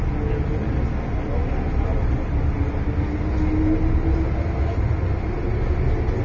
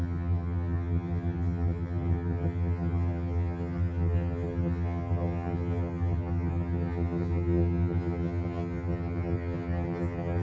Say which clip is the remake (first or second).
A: second